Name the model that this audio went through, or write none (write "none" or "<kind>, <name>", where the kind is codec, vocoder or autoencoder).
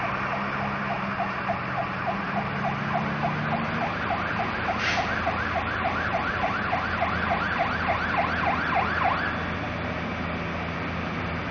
none